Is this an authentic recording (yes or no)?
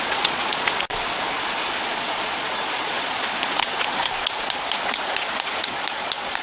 no